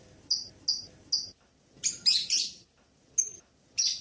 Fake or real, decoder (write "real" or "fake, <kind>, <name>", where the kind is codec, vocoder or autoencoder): real